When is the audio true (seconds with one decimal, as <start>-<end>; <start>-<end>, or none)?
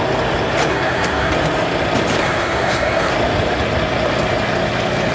0.0-0.7; 1.3-2.2; 3.1-5.1